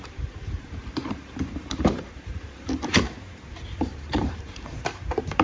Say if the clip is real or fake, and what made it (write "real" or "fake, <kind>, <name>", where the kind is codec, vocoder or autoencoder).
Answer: fake, vocoder, BigVGAN v2